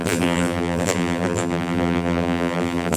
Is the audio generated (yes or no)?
yes